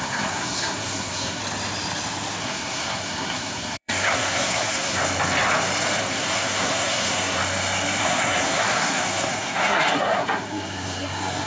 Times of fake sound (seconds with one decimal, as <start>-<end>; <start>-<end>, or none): 0.0-1.4; 2.4-5.0; 6.0-7.4; 8.0-11.5